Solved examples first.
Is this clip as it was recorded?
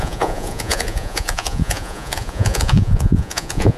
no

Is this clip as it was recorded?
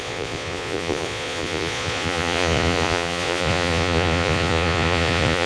no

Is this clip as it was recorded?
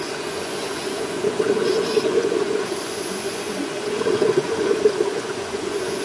no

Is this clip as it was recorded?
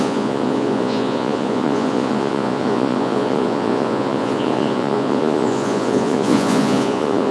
no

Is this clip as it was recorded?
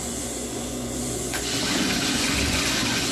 no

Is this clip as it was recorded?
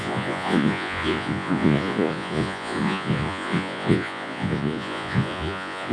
no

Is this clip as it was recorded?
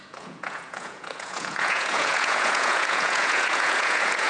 no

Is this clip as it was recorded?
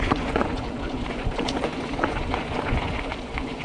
no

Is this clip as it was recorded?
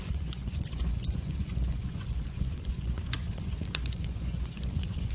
no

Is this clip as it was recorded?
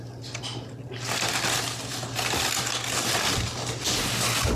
yes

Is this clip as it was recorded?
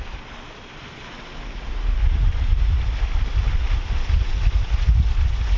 yes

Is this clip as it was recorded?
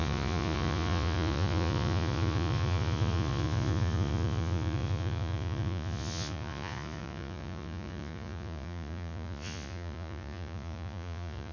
no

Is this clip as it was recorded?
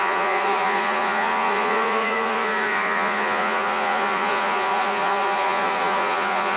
no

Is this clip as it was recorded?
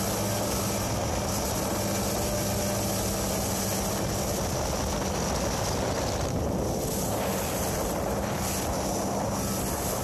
yes